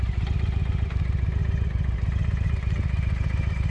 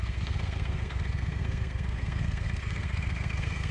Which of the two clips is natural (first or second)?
first